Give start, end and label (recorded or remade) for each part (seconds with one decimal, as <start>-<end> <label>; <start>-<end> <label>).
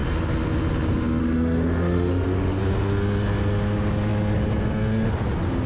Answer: 0.0-1.2 recorded; 1.2-2.6 remade; 2.6-5.7 recorded